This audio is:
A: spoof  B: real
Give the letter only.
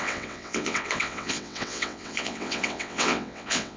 A